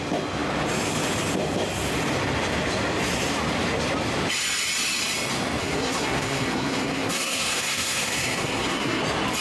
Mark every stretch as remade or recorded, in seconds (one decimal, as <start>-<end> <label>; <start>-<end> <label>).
0.0-5.6 recorded; 5.6-9.0 remade; 9.0-9.4 recorded